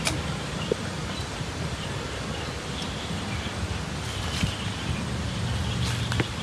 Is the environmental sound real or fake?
real